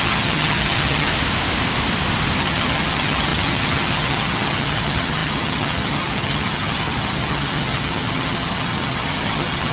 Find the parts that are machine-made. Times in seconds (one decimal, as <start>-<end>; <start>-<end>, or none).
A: 0.0-1.1; 2.4-9.7